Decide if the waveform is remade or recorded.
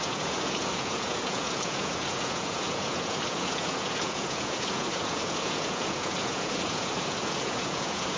remade